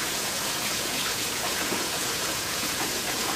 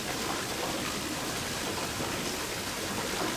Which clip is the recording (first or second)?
second